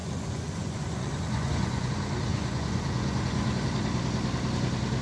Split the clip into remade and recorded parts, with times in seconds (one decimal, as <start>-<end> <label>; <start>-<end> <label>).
0.0-1.9 remade; 1.9-2.3 recorded; 2.3-3.6 remade; 3.6-5.0 recorded